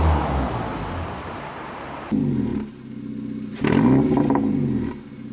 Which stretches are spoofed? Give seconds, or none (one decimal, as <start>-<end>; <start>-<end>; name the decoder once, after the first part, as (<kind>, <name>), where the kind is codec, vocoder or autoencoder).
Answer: none